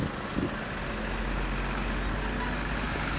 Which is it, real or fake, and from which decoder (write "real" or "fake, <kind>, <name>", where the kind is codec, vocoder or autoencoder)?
real